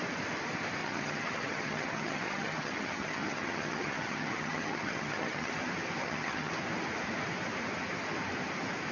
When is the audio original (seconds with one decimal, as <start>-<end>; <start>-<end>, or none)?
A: 0.0-0.8; 5.5-6.0; 6.5-8.9